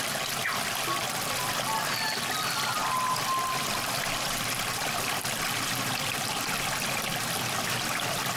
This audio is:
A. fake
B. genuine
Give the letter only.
B